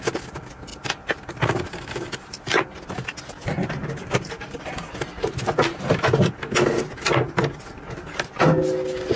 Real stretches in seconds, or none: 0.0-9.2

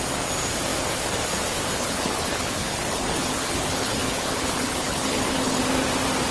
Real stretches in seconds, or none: 0.0-1.8; 5.6-6.3

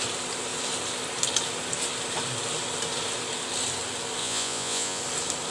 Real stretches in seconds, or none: 0.0-4.2; 5.0-5.5

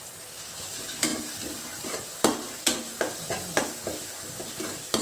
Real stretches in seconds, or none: 0.0-5.0

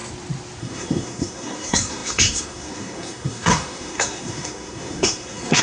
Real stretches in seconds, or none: 0.0-0.6

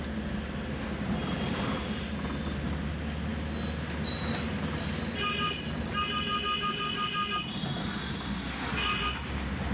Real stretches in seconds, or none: 0.0-9.7

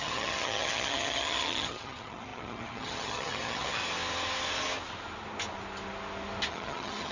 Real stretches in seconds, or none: 3.8-6.5